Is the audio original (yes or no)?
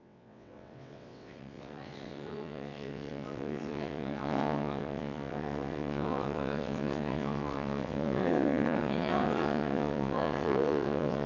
no